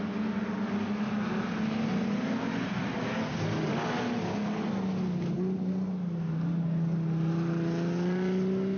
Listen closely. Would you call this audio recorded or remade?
recorded